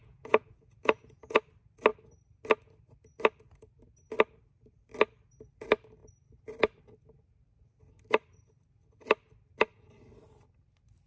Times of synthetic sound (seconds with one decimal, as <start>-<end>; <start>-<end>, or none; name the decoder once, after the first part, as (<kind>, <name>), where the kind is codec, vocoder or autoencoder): 0.0-1.4 (vocoder, Vocos)